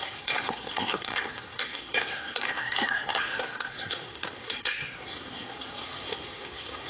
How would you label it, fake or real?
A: fake